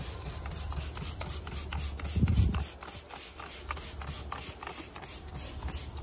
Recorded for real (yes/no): yes